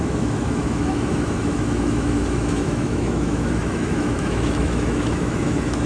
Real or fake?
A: fake